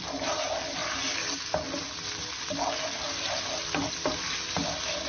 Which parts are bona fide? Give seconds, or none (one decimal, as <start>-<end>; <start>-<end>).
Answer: 0.0-5.1